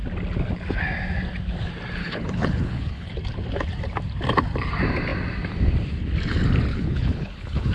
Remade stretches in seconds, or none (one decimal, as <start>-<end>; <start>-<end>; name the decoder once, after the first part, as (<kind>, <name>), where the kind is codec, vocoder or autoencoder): 2.0-3.1 (codec, HILCodec); 6.7-7.7